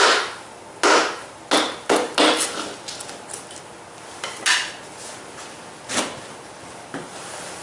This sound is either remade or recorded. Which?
recorded